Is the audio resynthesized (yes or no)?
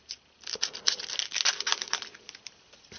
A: no